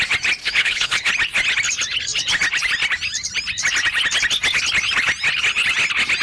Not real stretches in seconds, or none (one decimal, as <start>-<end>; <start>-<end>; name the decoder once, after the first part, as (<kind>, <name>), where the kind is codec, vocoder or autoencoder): 0.4-1.1 (codec, HILCodec)

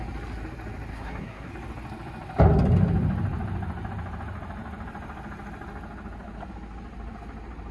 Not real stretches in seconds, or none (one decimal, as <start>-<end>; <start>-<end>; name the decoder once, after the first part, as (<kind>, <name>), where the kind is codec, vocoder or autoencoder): 0.9-1.5 (codec, SNAC)

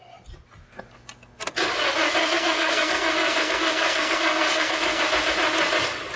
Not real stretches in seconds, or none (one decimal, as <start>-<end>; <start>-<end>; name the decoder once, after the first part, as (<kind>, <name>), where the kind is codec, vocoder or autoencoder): 2.2-5.0 (codec, SNAC)

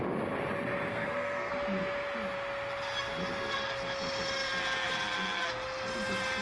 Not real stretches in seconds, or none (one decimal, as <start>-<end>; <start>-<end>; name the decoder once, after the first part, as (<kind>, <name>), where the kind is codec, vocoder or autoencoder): 0.9-1.5 (codec, SNAC)

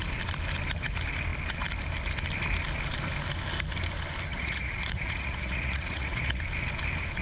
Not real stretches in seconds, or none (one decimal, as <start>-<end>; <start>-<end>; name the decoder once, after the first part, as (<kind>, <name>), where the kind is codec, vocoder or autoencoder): 4.3-6.4 (vocoder, Vocos)